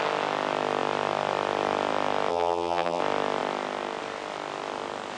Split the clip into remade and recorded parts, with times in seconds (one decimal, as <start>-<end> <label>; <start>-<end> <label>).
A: 0.0-2.3 recorded; 2.3-3.0 remade; 3.0-5.2 recorded